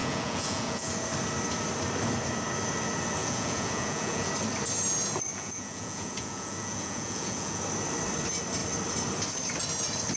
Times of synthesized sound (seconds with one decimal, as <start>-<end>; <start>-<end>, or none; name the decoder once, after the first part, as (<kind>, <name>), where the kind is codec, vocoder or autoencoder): 0.0-0.9 (vocoder, Vocos); 3.2-4.3; 5.3-7.6